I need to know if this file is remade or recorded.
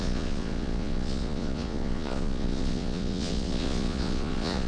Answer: remade